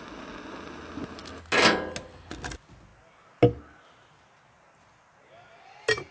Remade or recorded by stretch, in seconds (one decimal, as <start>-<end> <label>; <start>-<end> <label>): 0.0-6.1 recorded